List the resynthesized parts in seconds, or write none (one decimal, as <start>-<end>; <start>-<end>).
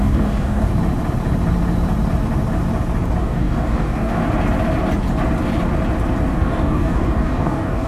0.0-0.7; 3.2-4.2; 6.3-7.9